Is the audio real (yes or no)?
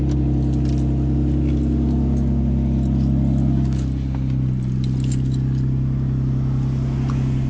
yes